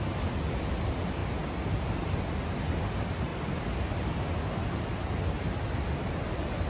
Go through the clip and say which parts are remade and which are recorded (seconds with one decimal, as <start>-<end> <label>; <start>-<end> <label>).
0.0-6.7 recorded